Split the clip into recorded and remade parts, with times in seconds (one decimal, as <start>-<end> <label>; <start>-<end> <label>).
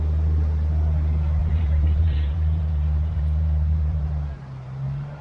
0.0-1.4 recorded; 1.4-4.1 remade; 4.1-5.2 recorded